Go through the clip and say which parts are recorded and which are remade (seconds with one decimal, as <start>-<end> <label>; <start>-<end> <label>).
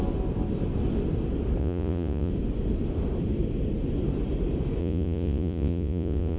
0.0-1.6 recorded; 1.6-2.3 remade; 2.3-4.8 recorded; 4.8-6.4 remade